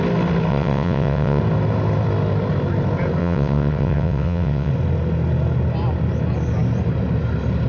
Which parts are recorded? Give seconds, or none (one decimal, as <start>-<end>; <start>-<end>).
0.0-0.5; 1.4-3.2; 4.7-7.7